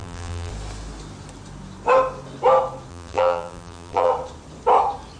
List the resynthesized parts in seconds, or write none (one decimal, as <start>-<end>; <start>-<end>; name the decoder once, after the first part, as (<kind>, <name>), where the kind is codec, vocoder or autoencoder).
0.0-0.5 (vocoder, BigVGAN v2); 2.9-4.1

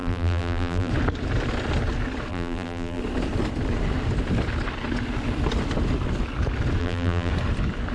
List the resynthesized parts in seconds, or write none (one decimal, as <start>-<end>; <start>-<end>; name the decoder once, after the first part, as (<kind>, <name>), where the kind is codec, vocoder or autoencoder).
0.0-0.9 (vocoder, BigVGAN v2); 2.3-3.0; 6.8-7.3

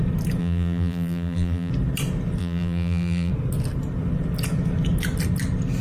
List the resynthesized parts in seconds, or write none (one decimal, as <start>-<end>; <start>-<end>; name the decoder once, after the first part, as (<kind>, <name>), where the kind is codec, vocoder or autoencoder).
0.4-1.7 (vocoder, BigVGAN v2); 2.4-3.3